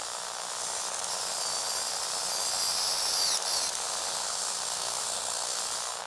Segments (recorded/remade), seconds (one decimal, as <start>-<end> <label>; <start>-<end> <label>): 0.0-4.2 recorded; 4.2-5.6 remade; 5.6-6.1 recorded